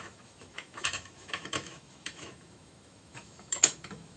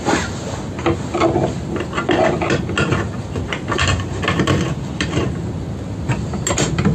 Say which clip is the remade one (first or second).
first